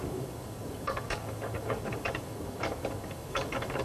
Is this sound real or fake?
fake